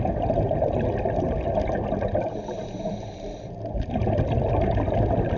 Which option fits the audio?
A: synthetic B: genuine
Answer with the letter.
B